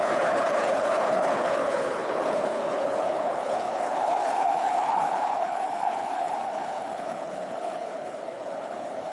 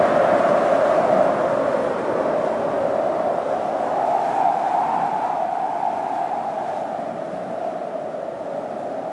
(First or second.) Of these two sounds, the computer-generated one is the first